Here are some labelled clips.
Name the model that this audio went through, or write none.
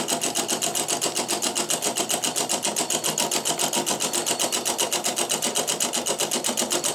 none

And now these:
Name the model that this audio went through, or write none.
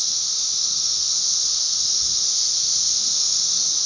autoencoder, DAC-VAE